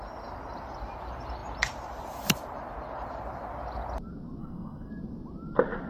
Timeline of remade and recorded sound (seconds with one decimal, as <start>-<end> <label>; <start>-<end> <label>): 0.0-4.4 recorded; 4.4-4.9 remade; 4.9-5.9 recorded